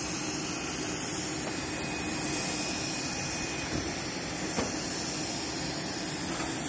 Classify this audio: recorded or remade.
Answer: recorded